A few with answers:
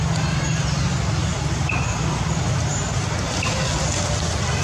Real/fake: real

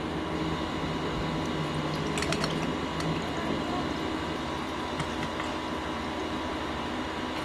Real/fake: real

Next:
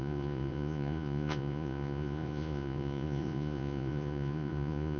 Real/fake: fake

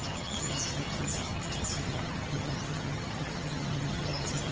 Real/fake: fake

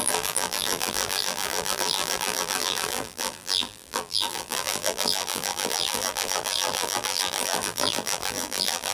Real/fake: fake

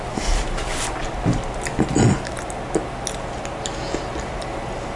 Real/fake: real